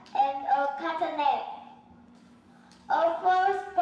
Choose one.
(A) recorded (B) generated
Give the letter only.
B